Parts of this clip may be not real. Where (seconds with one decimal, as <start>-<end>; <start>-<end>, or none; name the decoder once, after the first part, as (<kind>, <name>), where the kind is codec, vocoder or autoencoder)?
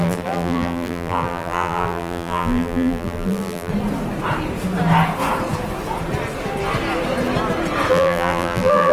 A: 0.0-3.7 (vocoder, BigVGAN v2); 7.9-8.9